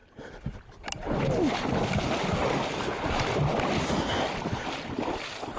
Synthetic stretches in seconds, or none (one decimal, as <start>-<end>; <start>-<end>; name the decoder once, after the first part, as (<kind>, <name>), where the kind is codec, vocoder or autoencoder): none